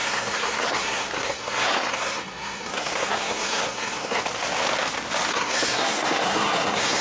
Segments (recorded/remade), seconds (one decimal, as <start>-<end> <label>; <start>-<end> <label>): 0.0-4.2 remade; 4.2-5.3 recorded; 5.3-7.0 remade